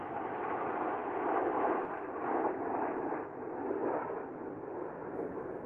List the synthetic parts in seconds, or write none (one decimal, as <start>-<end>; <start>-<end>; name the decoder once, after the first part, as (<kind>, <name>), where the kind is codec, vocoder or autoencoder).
1.0-4.4 (vocoder, BigVGAN v2)

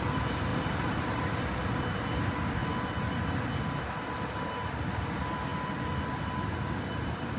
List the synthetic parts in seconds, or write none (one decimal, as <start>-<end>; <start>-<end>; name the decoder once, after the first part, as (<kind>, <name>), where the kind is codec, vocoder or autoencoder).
0.0-2.6 (vocoder, BigVGAN v2); 3.8-5.5; 7.0-7.4

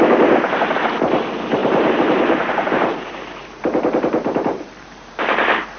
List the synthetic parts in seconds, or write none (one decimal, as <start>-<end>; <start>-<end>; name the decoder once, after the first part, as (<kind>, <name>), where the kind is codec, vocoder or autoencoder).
1.6-5.1 (vocoder, BigVGAN v2)